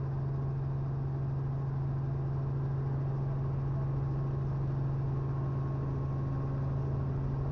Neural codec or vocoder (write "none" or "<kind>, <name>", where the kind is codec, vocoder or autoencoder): none